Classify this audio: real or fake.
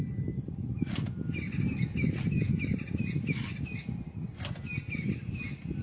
real